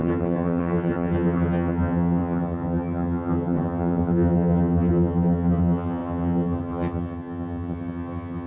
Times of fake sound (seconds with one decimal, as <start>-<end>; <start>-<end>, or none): 0.0-8.5